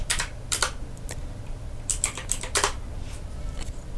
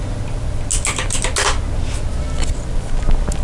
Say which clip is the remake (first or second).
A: first